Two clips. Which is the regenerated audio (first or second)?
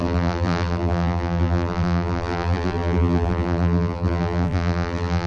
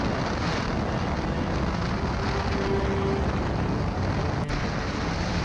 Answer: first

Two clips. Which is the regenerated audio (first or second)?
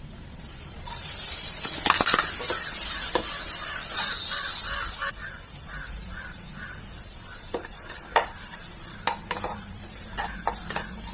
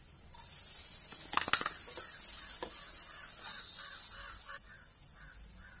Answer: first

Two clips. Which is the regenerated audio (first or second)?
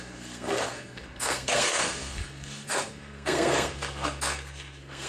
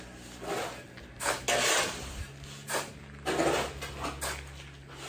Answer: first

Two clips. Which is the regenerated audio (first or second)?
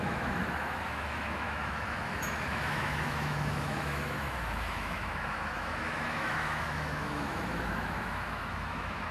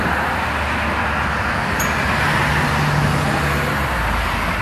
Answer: first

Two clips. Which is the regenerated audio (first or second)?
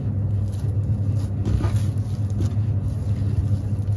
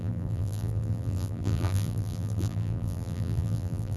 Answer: second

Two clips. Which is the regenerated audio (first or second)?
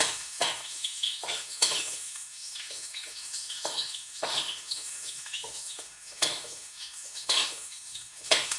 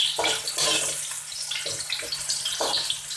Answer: first